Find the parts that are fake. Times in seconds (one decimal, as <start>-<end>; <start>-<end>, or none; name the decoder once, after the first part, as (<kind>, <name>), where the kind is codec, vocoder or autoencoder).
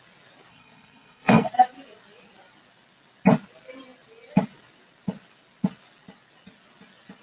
0.5-1.5 (codec, SNAC)